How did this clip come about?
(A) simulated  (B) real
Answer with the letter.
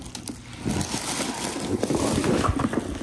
B